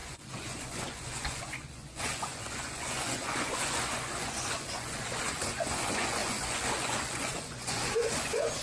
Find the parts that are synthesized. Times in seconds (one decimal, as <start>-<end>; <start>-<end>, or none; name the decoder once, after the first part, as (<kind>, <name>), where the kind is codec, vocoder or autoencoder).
0.0-8.6 (vocoder, Vocos)